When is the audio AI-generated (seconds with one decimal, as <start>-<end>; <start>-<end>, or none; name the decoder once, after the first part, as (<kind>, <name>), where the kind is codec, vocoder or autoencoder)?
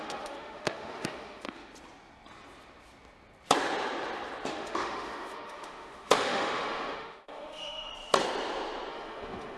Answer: 0.0-1.7 (autoencoder, DAC-VAE); 4.5-7.9; 8.9-9.6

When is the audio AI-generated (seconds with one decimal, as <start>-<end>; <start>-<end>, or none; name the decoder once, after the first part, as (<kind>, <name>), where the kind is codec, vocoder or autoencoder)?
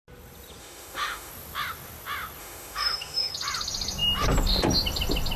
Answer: 0.6-1.3 (autoencoder, DAC-VAE); 2.4-3.3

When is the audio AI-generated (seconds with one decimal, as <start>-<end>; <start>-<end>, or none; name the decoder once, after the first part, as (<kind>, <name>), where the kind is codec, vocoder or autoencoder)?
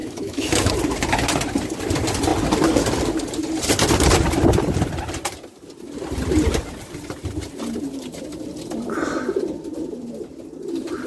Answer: 0.0-0.7 (autoencoder, DAC-VAE)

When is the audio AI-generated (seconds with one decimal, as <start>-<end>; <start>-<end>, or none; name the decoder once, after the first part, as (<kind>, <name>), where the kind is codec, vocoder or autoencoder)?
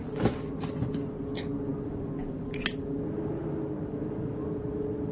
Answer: none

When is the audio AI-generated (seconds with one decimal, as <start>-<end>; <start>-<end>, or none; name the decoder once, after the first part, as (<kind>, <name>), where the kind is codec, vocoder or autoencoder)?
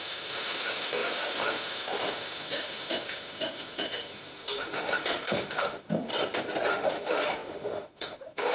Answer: 0.0-6.1 (autoencoder, DAC-VAE); 6.7-8.5